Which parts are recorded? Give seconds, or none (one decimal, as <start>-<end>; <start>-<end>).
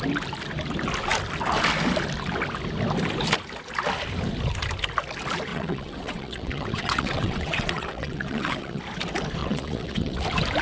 0.0-5.5; 8.8-9.4; 10.2-10.6